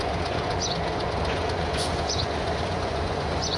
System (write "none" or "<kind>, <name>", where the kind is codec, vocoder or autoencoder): vocoder, Vocos